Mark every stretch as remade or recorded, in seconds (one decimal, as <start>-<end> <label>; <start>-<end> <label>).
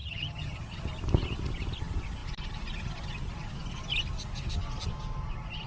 0.0-0.8 remade; 0.8-5.7 recorded